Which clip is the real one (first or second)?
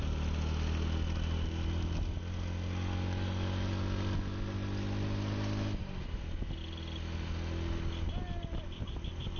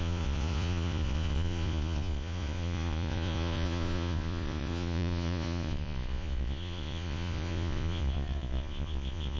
first